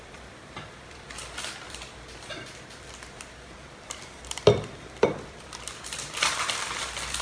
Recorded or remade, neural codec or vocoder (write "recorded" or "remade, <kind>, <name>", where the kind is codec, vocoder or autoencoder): remade, vocoder, BigVGAN v2